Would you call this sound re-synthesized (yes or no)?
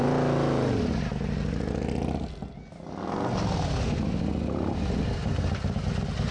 no